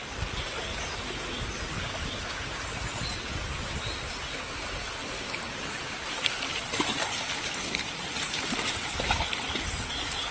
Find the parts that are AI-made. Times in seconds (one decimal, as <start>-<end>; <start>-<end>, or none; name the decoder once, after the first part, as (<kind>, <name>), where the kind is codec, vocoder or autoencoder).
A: none